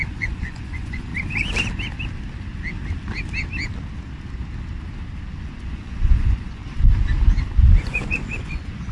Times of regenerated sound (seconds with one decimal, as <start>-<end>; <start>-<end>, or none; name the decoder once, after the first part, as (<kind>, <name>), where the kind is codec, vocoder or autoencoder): 0.0-1.1 (vocoder, Vocos); 5.4-6.6; 7.8-8.9